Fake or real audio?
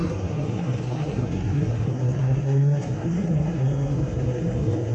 fake